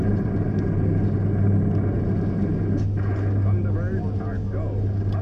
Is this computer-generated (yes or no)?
no